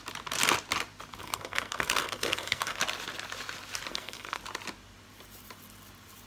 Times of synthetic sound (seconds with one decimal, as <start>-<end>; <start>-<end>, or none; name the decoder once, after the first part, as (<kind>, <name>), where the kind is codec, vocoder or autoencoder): 1.2-2.8 (codec, SNAC); 3.9-4.4